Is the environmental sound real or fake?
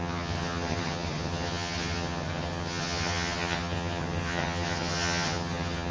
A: fake